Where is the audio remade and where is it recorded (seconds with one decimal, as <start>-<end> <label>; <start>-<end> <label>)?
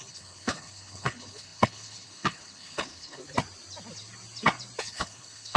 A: 0.0-3.2 remade; 3.2-4.8 recorded; 4.8-5.6 remade